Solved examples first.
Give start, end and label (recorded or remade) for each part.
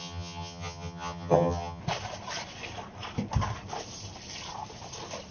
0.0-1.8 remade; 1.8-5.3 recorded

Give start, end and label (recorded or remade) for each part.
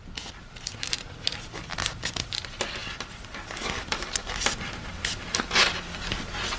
0.0-6.6 recorded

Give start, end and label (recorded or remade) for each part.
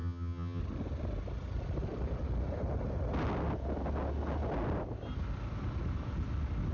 0.0-0.6 remade; 0.6-6.7 recorded